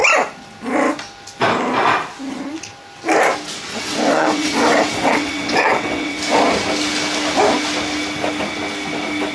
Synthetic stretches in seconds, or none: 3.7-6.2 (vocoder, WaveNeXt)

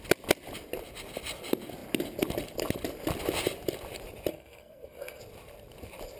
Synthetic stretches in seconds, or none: 4.3-5.2 (codec, SNAC)

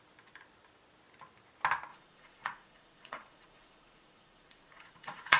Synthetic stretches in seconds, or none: 1.9-5.4 (vocoder, Vocos)

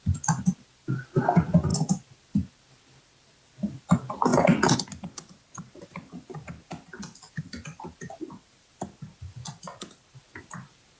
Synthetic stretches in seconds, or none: none

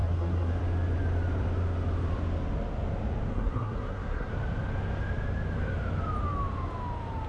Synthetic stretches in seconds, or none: 0.0-0.6 (codec, SNAC); 3.3-4.3

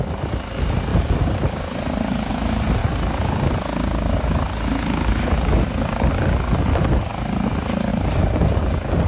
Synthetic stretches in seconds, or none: none